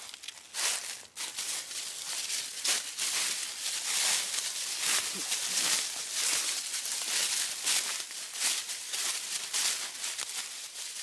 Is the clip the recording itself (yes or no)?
yes